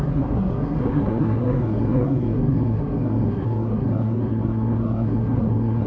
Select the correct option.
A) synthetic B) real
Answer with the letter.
A